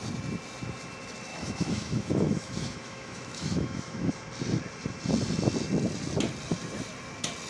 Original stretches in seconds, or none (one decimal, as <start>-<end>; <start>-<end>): 0.0-1.3; 4.1-7.5